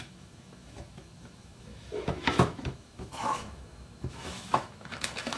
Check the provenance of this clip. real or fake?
fake